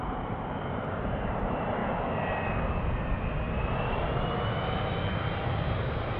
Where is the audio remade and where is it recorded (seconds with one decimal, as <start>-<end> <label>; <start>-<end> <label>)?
0.0-1.8 remade; 1.8-5.3 recorded; 5.3-6.2 remade